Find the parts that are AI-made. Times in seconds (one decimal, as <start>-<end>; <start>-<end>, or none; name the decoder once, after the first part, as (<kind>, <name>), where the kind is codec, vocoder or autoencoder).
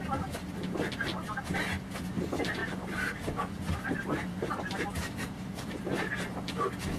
2.6-5.8 (vocoder, BigVGAN v2)